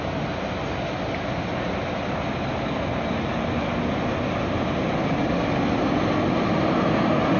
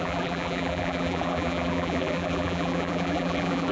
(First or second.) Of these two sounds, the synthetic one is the second